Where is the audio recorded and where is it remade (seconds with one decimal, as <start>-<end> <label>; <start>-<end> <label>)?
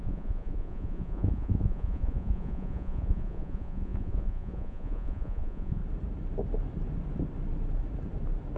0.0-5.8 remade; 5.8-8.6 recorded